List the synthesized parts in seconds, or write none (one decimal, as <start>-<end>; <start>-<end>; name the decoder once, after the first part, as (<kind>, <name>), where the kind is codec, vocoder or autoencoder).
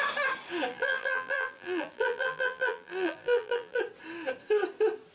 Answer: 0.7-3.8 (vocoder, BigVGAN v2)